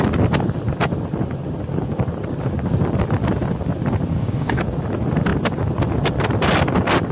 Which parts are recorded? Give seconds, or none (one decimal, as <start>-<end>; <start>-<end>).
0.0-4.1; 4.6-7.1